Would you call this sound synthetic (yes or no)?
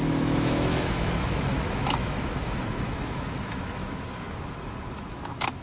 yes